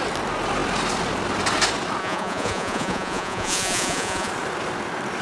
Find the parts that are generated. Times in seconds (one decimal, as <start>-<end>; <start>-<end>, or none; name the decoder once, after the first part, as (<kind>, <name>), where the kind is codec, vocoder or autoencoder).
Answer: 2.0-4.3 (vocoder, Vocos)